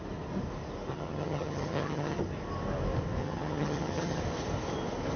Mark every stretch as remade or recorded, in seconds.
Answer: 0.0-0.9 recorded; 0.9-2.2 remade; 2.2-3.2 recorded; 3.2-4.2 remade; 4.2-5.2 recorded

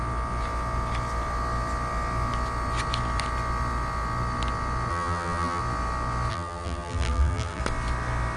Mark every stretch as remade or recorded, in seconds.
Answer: 0.0-4.9 recorded; 4.9-5.6 remade; 5.6-6.3 recorded; 6.3-7.6 remade; 7.6-8.4 recorded

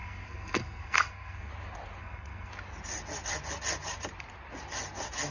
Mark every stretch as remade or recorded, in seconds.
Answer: 0.0-1.5 remade; 1.5-2.0 recorded; 2.0-2.5 remade; 2.5-5.3 recorded

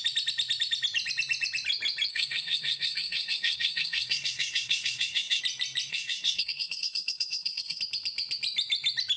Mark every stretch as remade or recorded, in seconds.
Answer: 0.0-2.1 recorded; 2.1-5.4 remade; 5.4-5.9 recorded; 5.9-7.8 remade; 7.8-9.2 recorded

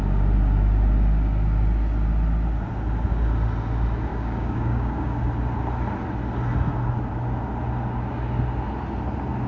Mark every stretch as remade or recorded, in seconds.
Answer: 0.0-4.1 recorded; 4.1-5.2 remade; 5.2-9.5 recorded